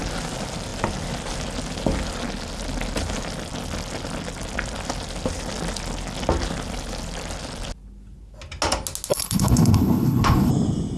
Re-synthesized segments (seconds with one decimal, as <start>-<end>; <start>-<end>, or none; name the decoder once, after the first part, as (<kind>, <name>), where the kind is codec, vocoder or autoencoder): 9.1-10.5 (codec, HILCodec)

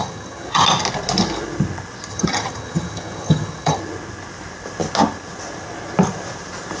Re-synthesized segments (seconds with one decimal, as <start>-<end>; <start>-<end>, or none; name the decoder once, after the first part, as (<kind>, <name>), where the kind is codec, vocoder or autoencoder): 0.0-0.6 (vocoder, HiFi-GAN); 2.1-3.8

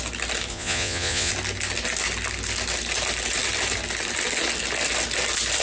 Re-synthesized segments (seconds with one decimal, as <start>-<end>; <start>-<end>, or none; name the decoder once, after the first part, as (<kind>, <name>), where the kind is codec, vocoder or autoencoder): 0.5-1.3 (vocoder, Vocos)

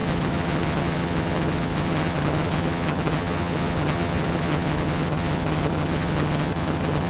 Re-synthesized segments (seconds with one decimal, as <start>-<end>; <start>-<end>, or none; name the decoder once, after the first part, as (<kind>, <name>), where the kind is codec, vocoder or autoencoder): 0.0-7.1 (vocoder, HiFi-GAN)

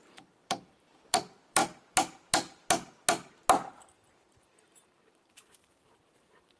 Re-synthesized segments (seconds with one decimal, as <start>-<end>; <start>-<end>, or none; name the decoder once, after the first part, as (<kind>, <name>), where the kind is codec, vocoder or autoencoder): 0.0-1.6 (vocoder, BigVGAN v2); 4.1-6.6